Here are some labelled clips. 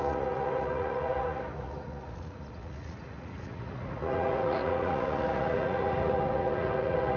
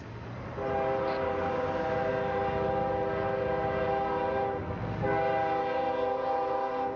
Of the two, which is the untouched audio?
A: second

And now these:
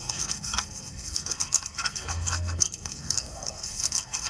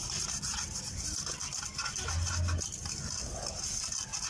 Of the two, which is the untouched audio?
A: second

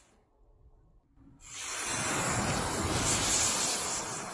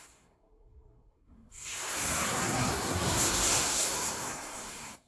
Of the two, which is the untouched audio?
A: first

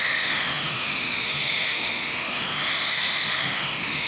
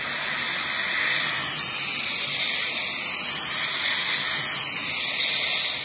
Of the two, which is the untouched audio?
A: second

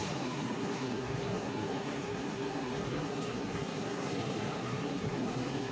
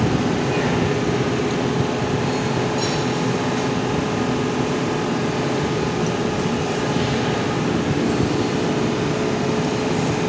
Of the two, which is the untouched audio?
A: second